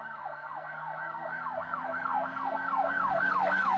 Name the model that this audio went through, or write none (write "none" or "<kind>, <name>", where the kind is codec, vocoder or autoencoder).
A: codec, SNAC